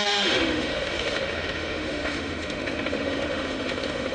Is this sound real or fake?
fake